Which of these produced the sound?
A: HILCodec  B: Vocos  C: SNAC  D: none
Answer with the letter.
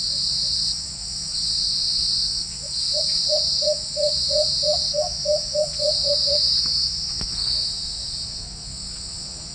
B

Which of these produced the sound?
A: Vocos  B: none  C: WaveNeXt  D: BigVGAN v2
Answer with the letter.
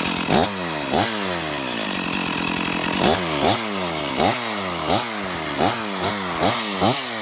B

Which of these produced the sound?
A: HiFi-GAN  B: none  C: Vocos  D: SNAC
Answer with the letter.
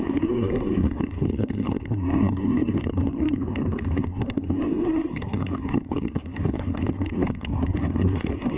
D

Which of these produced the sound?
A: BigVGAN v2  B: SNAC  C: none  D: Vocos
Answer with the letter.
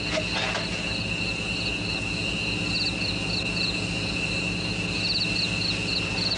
C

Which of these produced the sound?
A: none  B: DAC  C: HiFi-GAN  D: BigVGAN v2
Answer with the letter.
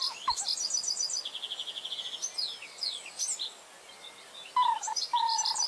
D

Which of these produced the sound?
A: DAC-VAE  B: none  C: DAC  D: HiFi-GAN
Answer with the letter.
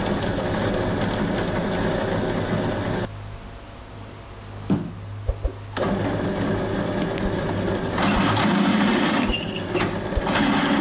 B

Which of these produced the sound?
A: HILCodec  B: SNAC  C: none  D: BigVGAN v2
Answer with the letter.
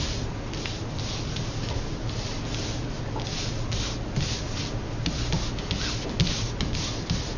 C